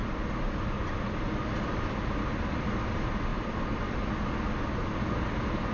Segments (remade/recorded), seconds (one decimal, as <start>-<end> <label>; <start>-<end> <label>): 0.0-0.9 remade; 0.9-3.3 recorded; 3.3-4.1 remade; 4.1-5.7 recorded